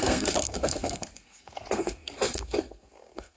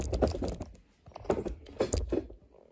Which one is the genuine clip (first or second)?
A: second